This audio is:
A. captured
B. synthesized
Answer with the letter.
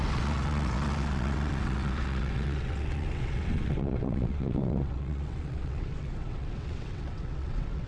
B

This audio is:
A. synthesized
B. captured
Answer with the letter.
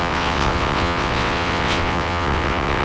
A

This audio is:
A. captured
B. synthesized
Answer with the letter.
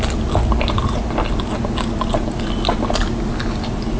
A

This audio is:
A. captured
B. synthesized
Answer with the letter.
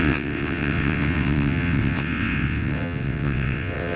B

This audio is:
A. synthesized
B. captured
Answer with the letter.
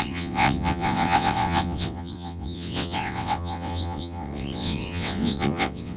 A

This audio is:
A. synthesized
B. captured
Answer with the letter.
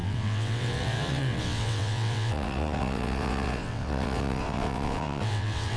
A